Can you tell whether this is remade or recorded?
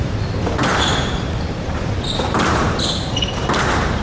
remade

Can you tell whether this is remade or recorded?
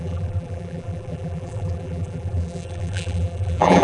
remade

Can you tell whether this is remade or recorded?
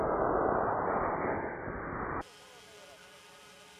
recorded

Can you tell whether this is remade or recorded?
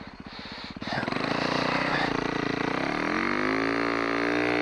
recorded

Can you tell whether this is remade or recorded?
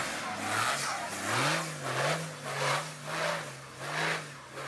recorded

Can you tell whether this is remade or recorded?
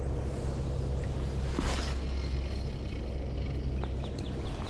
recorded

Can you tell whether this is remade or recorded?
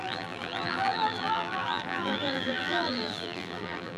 remade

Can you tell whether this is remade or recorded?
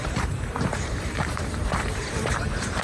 remade